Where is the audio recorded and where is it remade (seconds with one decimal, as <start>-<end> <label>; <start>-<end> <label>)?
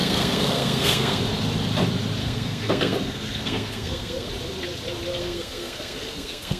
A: 0.0-1.2 remade; 1.2-2.2 recorded; 2.2-4.3 remade; 4.3-5.2 recorded; 5.2-6.6 remade